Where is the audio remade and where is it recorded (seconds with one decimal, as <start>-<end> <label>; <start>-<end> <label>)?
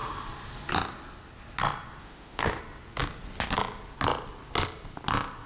0.0-2.0 recorded; 2.0-2.6 remade; 2.6-5.5 recorded